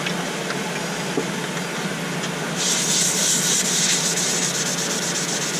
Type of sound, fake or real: real